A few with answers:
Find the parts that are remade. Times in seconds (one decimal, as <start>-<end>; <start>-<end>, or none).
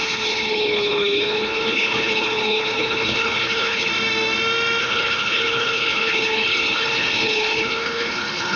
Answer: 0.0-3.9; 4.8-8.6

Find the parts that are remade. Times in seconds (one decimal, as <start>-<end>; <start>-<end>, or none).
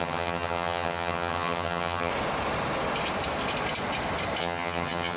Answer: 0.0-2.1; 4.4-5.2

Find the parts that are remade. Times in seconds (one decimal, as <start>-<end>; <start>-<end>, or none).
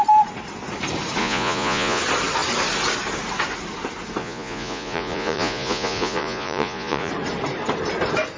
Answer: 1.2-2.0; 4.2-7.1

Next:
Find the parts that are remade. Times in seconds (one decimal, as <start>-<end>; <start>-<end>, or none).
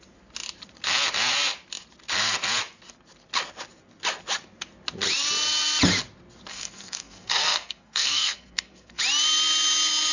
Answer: 6.5-9.0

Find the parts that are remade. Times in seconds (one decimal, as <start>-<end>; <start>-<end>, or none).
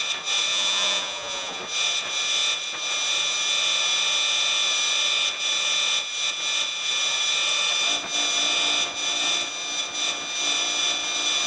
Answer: 0.5-1.6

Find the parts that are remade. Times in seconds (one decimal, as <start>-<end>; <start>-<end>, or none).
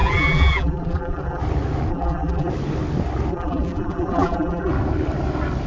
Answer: 0.0-1.4; 1.9-2.5; 3.3-4.7